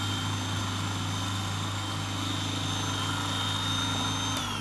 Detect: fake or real real